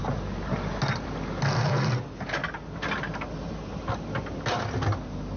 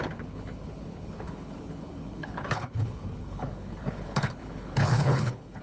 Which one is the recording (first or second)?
first